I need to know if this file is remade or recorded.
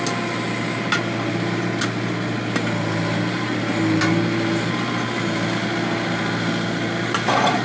recorded